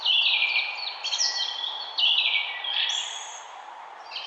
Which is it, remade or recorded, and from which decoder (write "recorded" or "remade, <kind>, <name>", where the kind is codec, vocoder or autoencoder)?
recorded